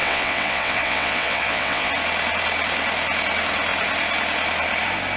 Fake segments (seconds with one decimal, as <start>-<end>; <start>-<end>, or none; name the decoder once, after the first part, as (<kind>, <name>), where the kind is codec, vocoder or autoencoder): 0.0-1.9 (vocoder, WaveNeXt)